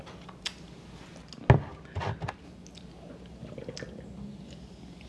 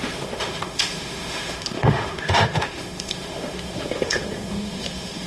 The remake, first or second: second